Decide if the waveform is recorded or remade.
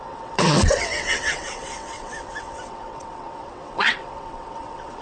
remade